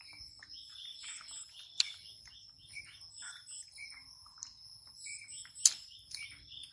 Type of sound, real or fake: real